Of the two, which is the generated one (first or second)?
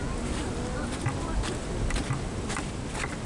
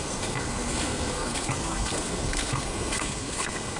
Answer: second